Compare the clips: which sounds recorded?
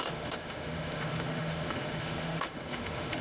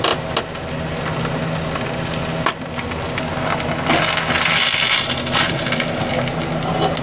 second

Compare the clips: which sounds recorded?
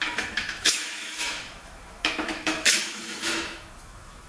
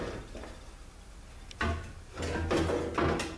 second